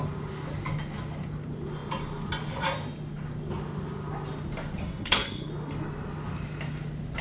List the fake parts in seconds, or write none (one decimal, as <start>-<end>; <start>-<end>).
4.8-5.5